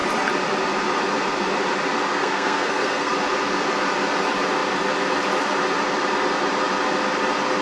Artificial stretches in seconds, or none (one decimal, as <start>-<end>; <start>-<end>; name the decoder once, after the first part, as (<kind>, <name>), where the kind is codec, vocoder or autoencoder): 2.1-3.1 (codec, SNAC)